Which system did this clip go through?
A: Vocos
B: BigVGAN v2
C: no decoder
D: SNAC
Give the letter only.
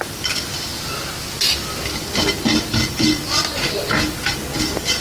C